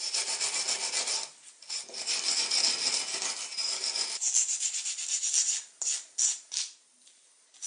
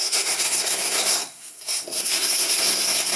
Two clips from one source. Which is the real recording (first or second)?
first